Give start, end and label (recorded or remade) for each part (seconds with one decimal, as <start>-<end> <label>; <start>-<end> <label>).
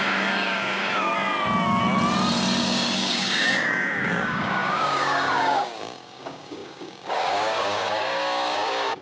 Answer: 0.0-1.1 remade; 1.1-2.6 recorded; 2.6-9.0 remade